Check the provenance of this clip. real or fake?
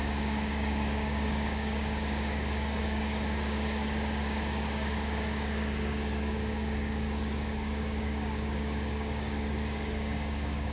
fake